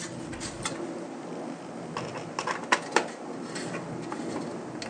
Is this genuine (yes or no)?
yes